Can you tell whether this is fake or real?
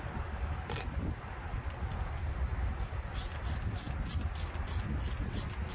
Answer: real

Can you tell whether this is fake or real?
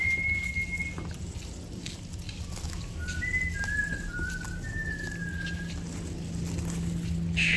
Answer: real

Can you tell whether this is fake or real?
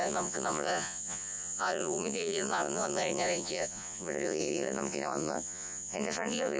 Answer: fake